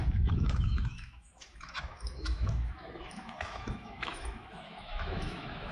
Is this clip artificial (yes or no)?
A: yes